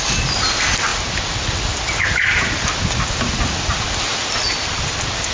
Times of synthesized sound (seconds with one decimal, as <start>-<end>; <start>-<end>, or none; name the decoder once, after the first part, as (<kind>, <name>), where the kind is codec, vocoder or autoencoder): none